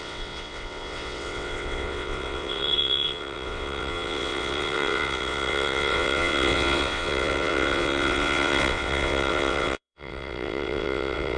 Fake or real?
fake